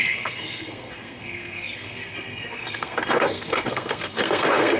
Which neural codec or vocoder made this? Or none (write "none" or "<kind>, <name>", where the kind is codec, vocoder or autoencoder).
codec, SNAC